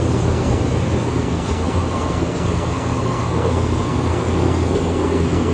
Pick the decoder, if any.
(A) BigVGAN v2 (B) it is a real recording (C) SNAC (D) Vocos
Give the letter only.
C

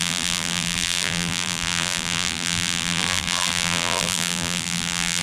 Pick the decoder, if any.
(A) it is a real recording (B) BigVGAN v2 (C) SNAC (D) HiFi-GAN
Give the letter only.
B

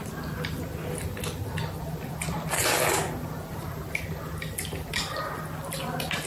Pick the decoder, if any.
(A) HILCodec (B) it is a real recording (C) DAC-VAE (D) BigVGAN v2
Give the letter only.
B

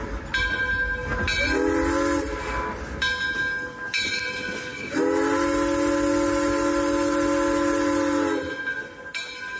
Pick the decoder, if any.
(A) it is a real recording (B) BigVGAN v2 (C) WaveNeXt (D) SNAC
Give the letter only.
A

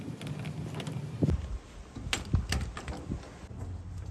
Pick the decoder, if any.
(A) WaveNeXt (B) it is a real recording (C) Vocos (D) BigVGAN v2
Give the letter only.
B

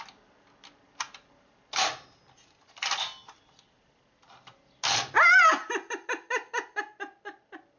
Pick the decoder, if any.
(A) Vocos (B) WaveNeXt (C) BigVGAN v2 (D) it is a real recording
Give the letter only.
D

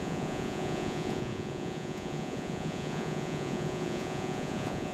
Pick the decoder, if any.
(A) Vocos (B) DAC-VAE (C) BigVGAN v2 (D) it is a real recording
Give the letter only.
A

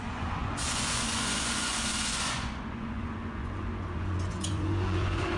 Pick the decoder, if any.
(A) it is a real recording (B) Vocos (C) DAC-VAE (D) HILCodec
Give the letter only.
B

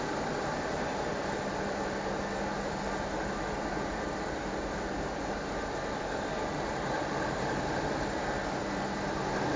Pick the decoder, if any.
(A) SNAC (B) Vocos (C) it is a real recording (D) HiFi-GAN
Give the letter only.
C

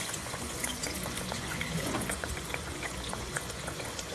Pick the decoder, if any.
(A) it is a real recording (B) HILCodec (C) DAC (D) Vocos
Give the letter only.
D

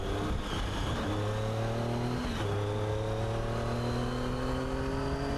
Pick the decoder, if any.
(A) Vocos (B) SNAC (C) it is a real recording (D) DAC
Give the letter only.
C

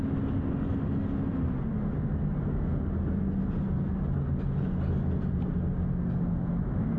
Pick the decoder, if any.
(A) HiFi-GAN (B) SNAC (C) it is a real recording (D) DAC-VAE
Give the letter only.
C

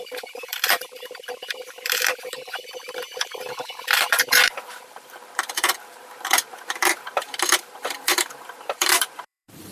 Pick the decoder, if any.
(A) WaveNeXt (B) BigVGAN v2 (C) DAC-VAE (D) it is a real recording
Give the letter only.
B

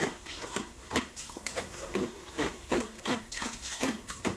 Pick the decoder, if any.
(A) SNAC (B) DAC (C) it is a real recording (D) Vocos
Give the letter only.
A